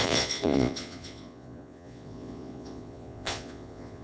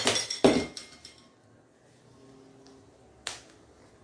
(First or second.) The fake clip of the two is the first